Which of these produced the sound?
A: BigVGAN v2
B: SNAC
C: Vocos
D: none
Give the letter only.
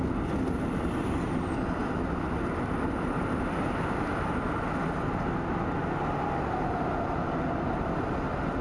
D